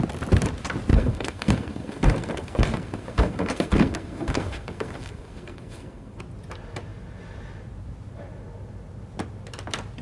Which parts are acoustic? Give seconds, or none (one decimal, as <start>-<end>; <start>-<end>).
0.0-0.9; 6.2-10.0